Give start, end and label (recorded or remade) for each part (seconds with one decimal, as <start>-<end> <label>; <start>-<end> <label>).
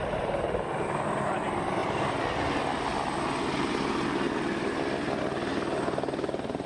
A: 0.0-6.7 recorded